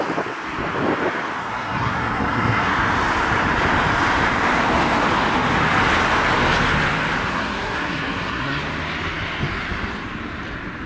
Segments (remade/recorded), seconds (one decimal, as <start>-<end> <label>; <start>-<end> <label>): 0.0-1.4 recorded; 1.4-2.7 remade; 2.7-7.3 recorded; 7.3-8.6 remade; 8.6-10.9 recorded